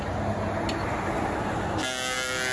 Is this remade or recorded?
recorded